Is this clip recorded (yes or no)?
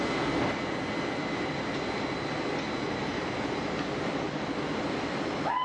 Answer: yes